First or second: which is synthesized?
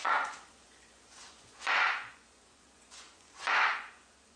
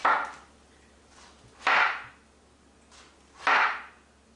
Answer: first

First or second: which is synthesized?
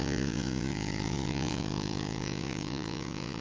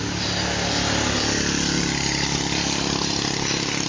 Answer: first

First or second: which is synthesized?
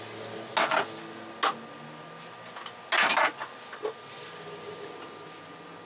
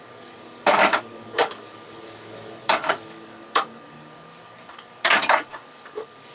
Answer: second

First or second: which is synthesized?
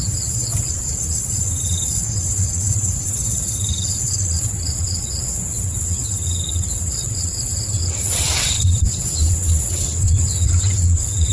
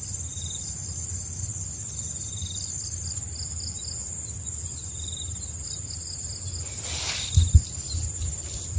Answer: first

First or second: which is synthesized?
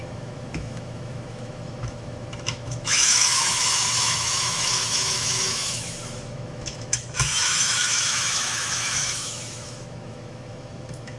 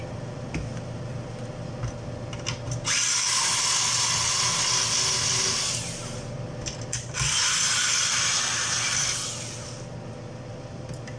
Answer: first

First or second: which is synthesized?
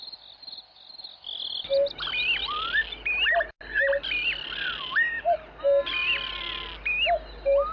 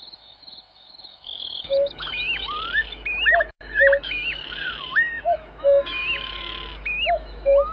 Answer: second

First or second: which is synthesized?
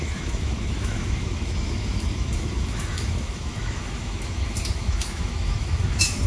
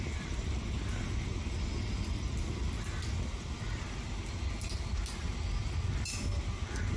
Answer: first